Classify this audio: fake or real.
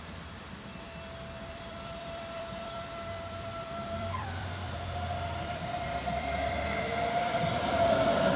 fake